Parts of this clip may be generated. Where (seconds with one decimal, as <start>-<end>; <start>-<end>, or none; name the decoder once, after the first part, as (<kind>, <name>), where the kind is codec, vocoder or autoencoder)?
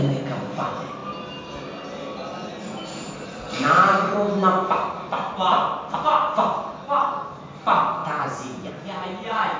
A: 8.0-8.7 (vocoder, Vocos)